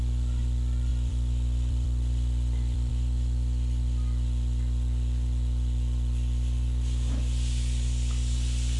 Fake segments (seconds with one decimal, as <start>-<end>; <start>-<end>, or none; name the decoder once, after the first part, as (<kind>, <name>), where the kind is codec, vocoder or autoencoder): 0.9-2.9 (vocoder, BigVGAN v2)